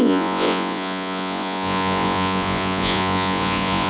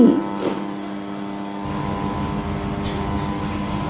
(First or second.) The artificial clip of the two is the first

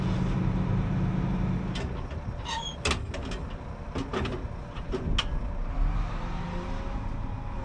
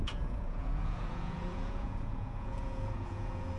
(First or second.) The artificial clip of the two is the second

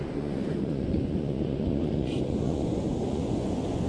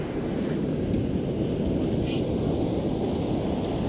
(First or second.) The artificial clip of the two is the first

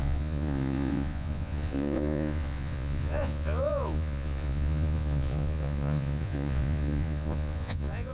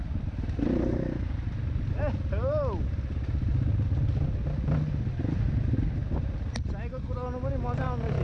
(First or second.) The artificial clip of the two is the first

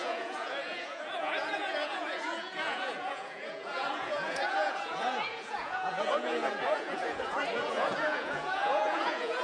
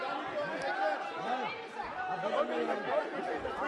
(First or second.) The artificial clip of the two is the first